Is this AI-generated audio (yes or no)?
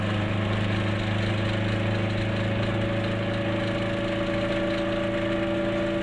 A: no